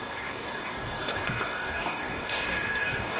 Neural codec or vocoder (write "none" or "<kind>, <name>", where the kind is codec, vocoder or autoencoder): codec, DAC